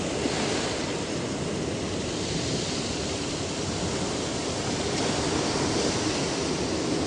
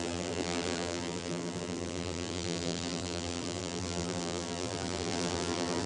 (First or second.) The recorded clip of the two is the first